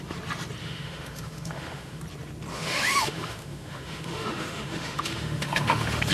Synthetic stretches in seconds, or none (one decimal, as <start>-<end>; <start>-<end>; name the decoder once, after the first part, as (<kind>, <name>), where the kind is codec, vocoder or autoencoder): 0.6-2.0 (autoencoder, DAC-VAE); 2.5-6.1